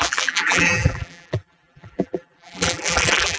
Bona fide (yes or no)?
no